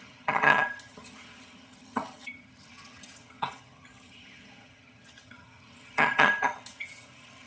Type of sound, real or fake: fake